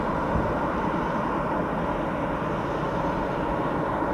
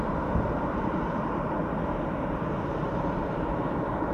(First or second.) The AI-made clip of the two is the second